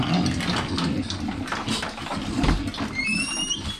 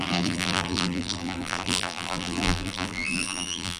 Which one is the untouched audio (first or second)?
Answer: first